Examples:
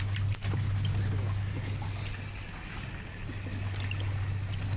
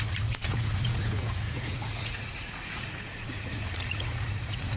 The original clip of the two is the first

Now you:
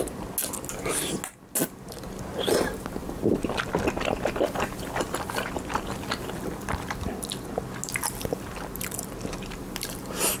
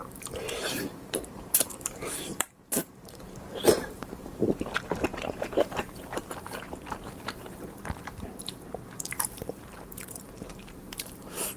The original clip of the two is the first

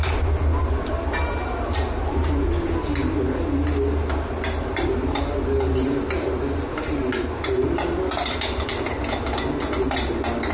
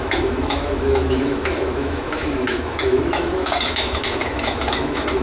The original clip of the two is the first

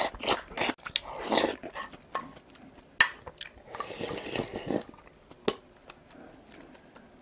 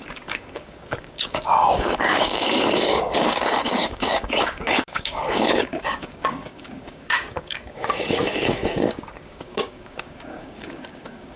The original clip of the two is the first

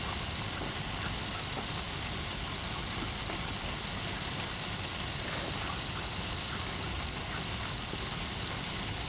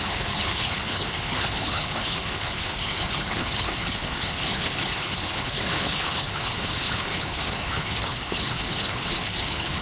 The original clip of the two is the first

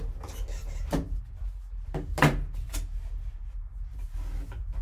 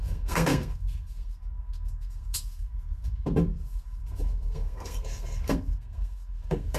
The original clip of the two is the first